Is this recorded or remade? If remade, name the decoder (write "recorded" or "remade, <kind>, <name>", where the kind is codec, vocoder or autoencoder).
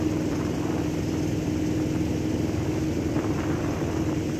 recorded